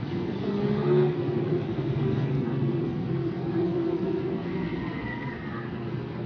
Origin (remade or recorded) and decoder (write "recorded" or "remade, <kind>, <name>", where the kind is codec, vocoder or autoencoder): remade, codec, SNAC